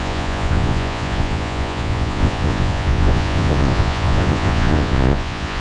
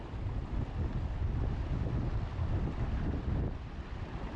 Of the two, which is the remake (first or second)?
first